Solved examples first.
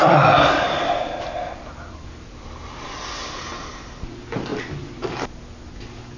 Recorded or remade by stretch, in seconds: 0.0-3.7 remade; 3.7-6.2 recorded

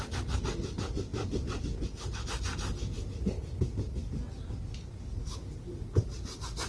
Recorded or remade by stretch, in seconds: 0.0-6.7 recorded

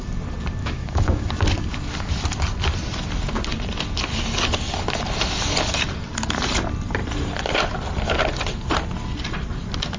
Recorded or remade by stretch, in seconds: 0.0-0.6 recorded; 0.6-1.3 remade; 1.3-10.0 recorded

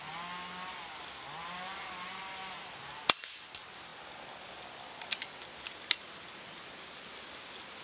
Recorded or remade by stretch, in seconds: 0.0-7.8 recorded

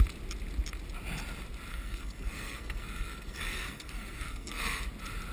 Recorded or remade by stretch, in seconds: 0.0-1.7 recorded; 1.7-4.8 remade; 4.8-5.3 recorded

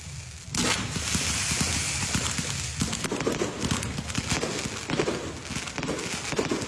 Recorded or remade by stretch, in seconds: 0.0-6.7 recorded

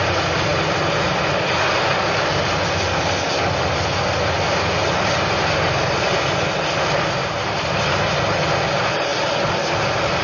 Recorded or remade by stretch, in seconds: 0.0-7.2 recorded; 7.2-7.8 remade; 7.8-10.2 recorded

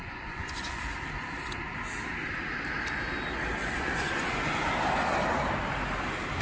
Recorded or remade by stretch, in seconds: 0.0-0.8 remade; 0.8-3.6 recorded; 3.6-4.7 remade; 4.7-6.4 recorded